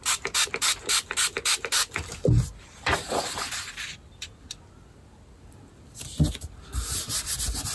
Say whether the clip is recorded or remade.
recorded